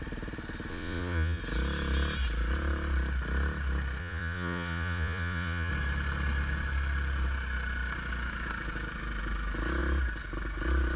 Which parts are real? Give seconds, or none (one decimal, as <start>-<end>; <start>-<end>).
0.0-0.7; 1.4-4.0; 5.7-11.0